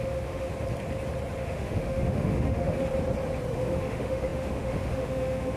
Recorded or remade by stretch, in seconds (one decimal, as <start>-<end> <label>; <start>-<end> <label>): 0.0-0.5 remade; 0.5-1.4 recorded; 1.4-2.8 remade; 2.8-3.5 recorded; 3.5-5.6 remade